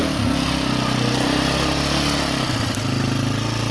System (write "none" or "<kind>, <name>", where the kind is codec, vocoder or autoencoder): none